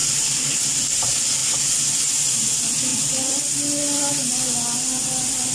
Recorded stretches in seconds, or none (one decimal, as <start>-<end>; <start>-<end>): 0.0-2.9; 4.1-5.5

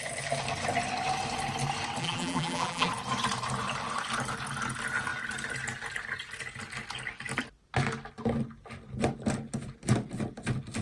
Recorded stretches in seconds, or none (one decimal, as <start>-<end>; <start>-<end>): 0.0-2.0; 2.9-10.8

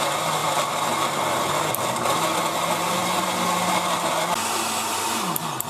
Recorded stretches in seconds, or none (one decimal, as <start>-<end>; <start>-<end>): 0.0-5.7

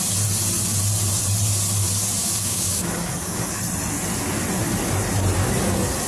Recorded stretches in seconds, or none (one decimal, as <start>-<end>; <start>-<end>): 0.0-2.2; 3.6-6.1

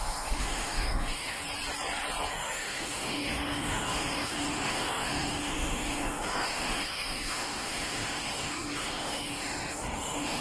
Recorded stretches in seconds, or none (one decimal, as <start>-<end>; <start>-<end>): 1.4-2.3